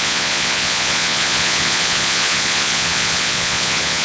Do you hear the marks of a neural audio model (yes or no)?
yes